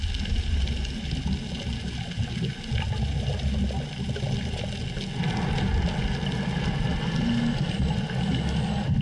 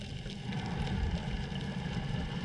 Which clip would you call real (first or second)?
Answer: first